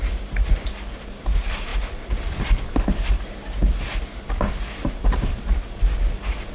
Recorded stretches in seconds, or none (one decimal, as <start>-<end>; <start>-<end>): 0.0-6.5